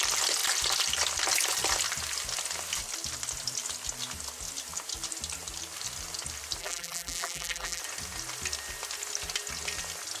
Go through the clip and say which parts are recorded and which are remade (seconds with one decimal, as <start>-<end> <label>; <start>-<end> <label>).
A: 0.0-6.6 recorded; 6.6-7.8 remade; 7.8-10.2 recorded